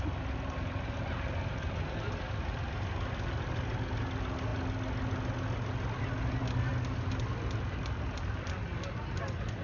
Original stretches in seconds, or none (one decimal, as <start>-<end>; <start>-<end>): 0.0-9.6